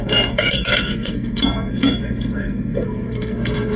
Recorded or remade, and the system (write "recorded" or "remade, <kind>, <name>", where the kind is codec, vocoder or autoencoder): remade, codec, SNAC